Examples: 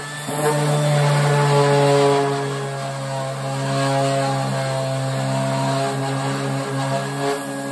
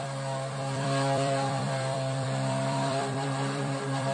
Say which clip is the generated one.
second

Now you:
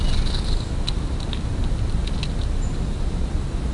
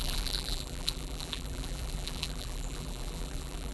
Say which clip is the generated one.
second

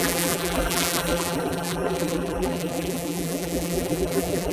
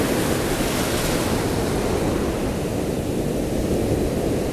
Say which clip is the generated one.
first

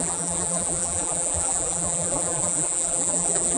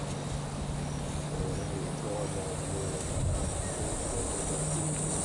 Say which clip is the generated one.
first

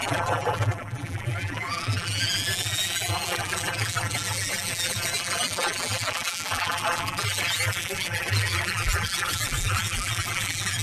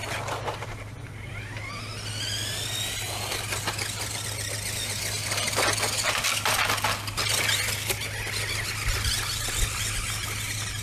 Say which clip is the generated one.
first